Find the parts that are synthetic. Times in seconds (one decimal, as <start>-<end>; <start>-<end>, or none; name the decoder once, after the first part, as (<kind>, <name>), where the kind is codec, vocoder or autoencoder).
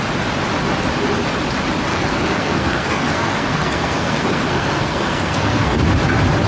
1.9-5.8 (codec, SNAC)